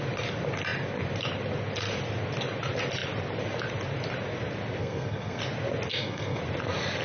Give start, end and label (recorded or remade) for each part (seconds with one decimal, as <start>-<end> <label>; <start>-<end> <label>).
0.0-4.8 recorded; 4.8-5.4 remade; 5.4-5.9 recorded; 5.9-6.4 remade; 6.4-7.0 recorded